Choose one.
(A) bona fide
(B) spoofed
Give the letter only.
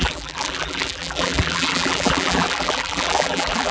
B